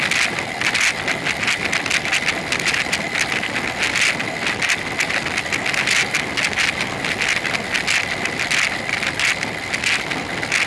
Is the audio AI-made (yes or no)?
no